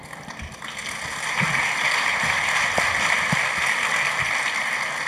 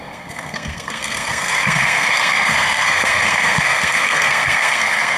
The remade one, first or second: second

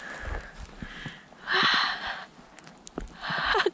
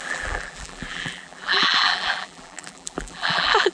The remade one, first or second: second